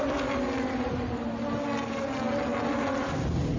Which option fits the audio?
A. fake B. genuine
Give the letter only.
B